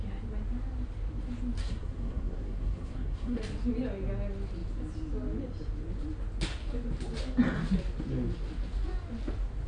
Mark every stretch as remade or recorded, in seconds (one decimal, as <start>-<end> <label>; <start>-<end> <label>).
0.0-1.6 recorded; 1.6-3.4 remade; 3.4-9.7 recorded